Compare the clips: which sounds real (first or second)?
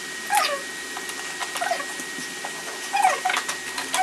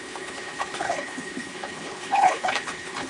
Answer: first